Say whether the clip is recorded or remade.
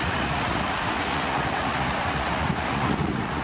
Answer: remade